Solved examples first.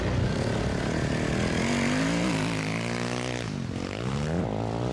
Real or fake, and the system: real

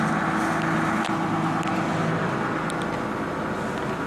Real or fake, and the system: real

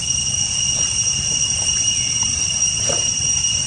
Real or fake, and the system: real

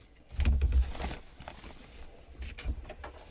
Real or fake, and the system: real